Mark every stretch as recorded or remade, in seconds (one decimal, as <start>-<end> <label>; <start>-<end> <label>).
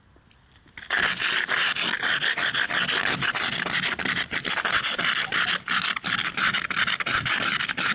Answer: 0.0-7.9 recorded